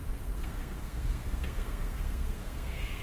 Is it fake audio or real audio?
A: fake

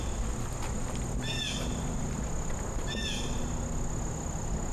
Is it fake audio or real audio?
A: real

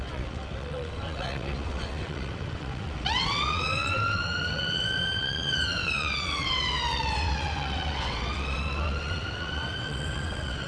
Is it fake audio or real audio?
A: fake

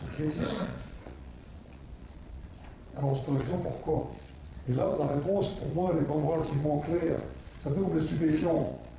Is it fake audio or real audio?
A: fake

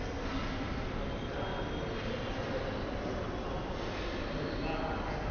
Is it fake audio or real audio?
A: real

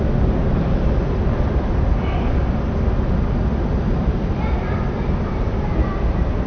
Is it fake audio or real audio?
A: real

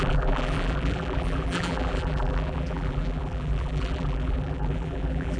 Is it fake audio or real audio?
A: fake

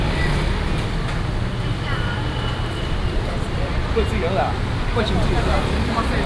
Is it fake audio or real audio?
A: real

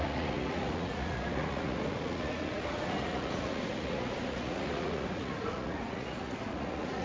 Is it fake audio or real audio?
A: fake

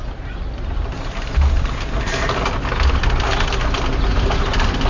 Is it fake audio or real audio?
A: real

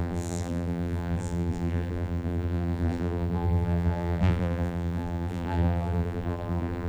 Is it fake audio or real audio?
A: fake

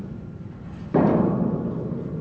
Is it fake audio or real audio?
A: fake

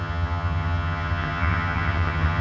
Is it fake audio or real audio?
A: fake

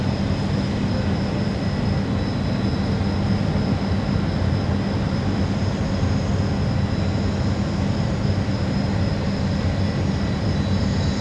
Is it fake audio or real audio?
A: real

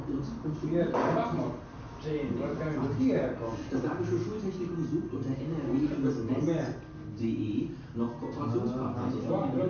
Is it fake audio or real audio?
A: real